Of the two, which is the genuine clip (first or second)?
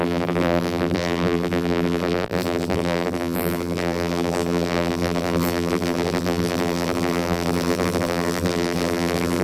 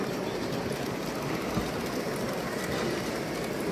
second